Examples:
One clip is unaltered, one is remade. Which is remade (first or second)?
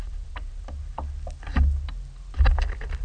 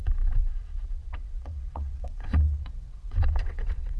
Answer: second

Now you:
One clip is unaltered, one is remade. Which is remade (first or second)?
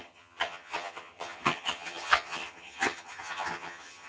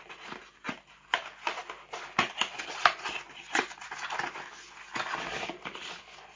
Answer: first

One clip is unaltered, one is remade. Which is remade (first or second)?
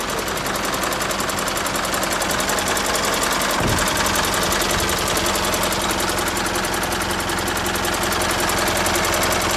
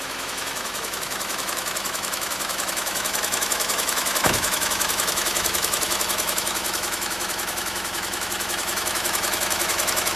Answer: second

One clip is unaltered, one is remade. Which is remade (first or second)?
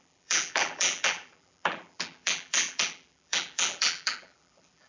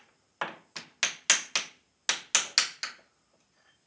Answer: first